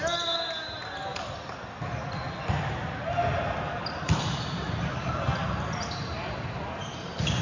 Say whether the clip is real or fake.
real